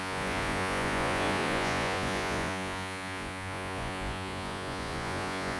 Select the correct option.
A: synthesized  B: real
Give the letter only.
A